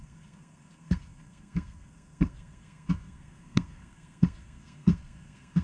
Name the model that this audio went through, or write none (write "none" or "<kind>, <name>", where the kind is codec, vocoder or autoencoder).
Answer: codec, SNAC